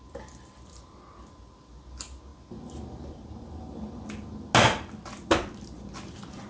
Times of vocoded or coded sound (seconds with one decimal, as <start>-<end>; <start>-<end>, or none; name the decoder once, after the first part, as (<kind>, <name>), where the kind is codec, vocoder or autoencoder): none